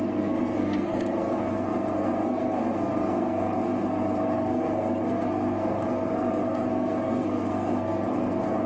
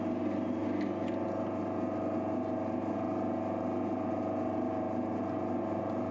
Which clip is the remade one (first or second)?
first